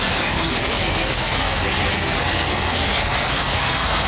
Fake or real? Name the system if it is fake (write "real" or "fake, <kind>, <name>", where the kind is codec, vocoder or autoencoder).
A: fake, codec, SNAC